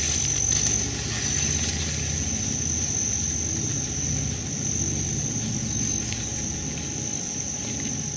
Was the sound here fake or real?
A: real